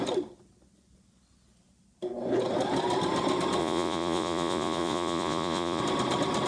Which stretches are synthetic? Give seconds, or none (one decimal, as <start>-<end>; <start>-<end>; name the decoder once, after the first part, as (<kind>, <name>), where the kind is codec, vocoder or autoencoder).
3.6-5.8 (vocoder, Vocos)